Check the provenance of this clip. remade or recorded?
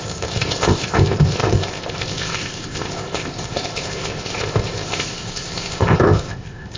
remade